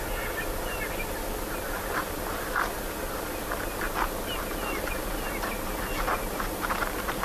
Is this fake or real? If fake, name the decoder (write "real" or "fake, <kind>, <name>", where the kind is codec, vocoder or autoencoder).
real